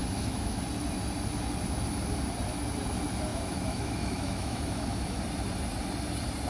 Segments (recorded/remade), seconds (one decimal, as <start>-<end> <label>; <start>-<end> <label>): 0.0-0.6 remade; 0.6-3.3 recorded; 3.3-5.2 remade; 5.2-6.5 recorded